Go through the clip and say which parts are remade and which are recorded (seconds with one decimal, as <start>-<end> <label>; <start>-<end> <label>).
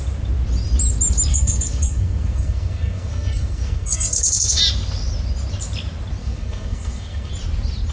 0.0-1.3 recorded; 1.3-4.6 remade; 4.6-6.2 recorded; 6.2-7.3 remade; 7.3-7.9 recorded